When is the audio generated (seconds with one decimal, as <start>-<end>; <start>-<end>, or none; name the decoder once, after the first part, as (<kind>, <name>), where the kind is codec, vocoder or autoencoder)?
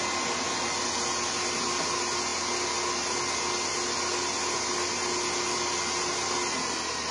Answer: none